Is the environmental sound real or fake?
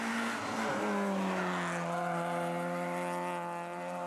real